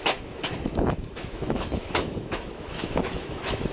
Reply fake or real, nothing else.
fake